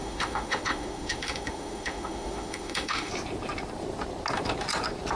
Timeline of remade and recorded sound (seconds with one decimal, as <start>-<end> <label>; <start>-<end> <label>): 0.0-3.1 remade; 3.1-5.2 recorded